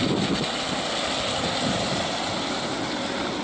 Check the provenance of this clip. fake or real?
real